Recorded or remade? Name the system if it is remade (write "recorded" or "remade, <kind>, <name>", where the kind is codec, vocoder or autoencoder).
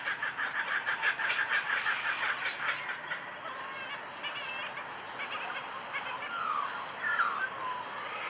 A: recorded